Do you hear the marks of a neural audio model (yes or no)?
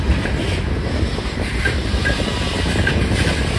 no